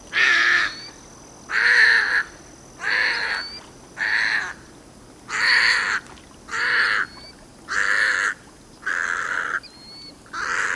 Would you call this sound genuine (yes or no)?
yes